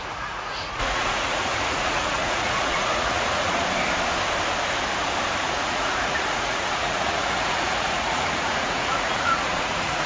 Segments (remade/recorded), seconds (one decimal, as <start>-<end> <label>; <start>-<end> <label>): 0.0-3.6 remade; 3.6-5.4 recorded; 5.4-10.1 remade